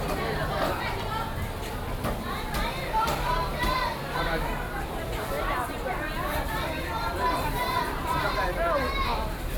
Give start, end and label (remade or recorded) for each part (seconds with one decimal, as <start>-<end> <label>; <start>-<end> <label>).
0.0-9.6 remade